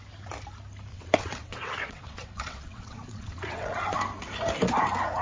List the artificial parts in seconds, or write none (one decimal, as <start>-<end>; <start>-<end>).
0.9-4.0

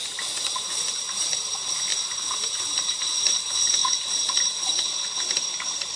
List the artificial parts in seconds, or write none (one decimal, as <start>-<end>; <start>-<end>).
none

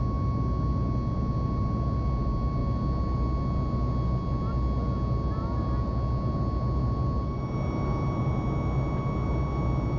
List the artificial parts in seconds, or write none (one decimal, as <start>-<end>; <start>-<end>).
none

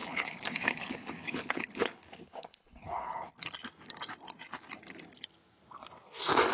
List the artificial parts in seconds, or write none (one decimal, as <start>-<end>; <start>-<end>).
0.0-3.3